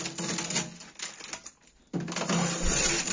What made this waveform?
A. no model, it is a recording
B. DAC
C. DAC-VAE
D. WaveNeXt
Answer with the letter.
A